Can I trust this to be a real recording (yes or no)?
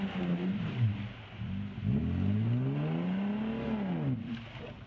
yes